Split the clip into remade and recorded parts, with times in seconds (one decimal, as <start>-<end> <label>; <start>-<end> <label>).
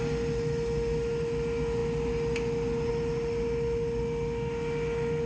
0.0-5.3 recorded